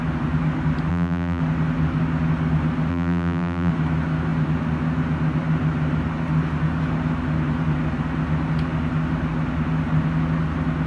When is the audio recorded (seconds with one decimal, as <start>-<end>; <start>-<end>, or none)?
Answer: 0.0-0.9; 1.4-2.9; 3.7-10.9